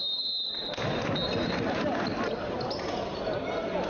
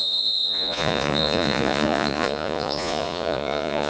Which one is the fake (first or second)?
second